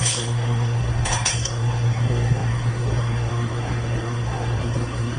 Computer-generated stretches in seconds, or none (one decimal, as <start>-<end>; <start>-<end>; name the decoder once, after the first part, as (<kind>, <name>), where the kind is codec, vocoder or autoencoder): 0.0-5.2 (codec, SNAC)